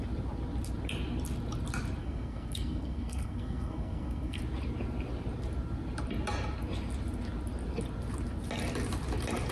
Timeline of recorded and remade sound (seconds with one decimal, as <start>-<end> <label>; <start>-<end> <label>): 0.0-2.0 recorded; 2.0-4.4 remade; 4.4-9.5 recorded